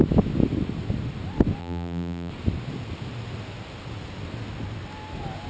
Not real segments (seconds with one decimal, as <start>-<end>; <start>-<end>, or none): 1.6-2.3